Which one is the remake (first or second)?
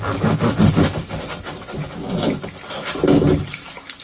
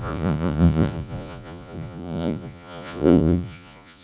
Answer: second